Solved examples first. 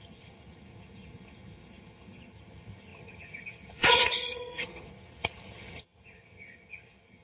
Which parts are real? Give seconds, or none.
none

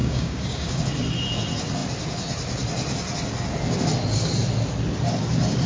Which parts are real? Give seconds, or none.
0.8-5.7

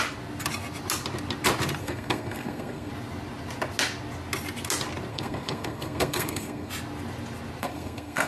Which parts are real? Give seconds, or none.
0.0-1.8; 2.9-5.1; 6.7-7.6

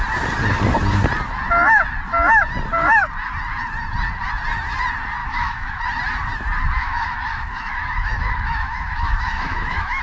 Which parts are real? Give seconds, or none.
0.0-5.2; 5.8-6.8